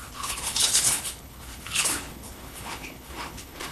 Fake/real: fake